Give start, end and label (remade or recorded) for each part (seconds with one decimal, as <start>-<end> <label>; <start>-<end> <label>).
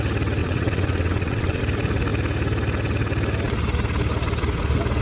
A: 0.0-0.4 recorded; 0.4-1.6 remade; 1.6-5.0 recorded